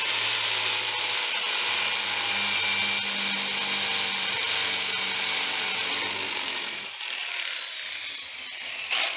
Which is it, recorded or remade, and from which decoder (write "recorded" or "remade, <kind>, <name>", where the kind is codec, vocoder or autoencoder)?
recorded